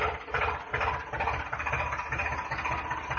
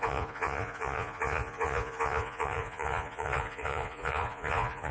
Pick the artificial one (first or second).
second